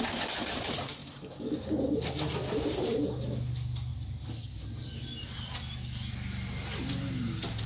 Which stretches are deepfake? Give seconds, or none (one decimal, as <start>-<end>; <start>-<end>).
1.0-1.6